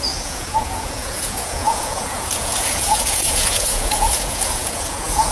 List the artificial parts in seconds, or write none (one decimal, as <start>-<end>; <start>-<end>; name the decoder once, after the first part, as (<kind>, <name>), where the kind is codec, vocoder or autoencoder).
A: 0.0-5.3 (vocoder, Vocos)

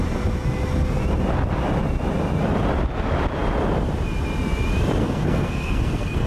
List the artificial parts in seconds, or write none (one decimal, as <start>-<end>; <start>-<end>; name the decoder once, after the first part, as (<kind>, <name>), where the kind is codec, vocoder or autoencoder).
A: 5.0-6.3 (codec, SNAC)

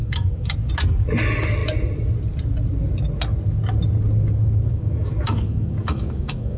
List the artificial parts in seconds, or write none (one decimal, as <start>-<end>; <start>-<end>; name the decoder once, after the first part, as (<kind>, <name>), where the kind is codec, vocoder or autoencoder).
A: 0.0-0.7 (codec, DAC); 4.7-6.6

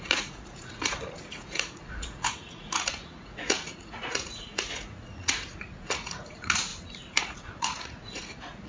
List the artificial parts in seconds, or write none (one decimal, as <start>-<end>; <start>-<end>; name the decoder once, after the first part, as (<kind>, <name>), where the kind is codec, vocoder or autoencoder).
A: 0.0-6.7 (vocoder, Vocos); 7.2-8.7

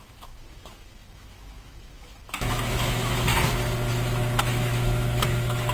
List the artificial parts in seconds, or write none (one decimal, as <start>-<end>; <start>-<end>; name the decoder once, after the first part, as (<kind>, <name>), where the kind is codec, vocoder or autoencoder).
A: 0.0-3.3 (autoencoder, DAC-VAE); 3.9-5.7

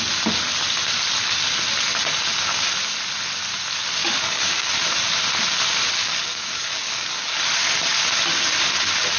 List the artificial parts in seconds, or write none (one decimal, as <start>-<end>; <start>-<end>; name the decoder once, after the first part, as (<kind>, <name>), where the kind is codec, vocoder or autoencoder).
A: 4.0-4.7 (codec, DAC); 6.0-7.4

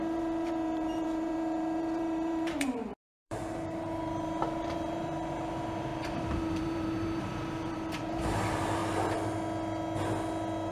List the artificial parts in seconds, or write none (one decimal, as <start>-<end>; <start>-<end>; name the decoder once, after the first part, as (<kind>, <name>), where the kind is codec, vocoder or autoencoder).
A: 0.0-8.8 (vocoder, BigVGAN v2)

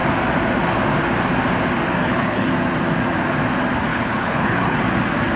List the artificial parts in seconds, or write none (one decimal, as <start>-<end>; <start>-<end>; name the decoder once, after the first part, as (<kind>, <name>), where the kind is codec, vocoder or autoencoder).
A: 2.0-2.5 (codec, HILCodec); 3.9-4.8